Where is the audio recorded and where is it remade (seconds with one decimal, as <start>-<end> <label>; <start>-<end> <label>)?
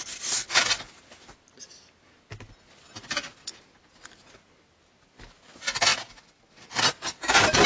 0.0-7.7 recorded